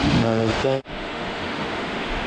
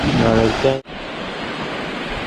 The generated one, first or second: first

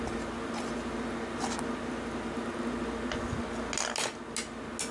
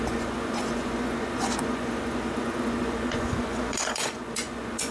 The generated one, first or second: second